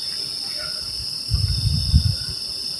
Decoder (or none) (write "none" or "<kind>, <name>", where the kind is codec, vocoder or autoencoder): none